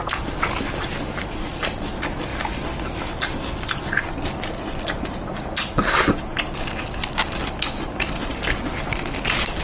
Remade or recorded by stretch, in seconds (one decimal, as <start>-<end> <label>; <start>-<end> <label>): 0.0-9.6 recorded